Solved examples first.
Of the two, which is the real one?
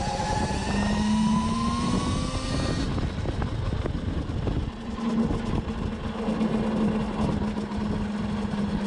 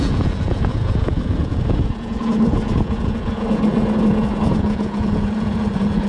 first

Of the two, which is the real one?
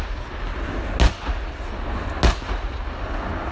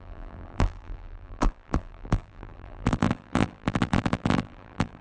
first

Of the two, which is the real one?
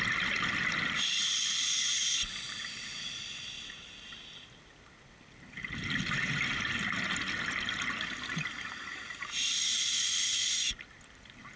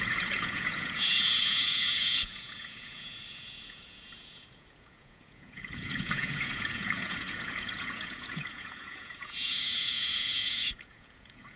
first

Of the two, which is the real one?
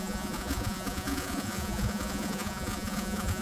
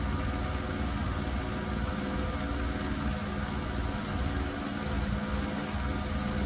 second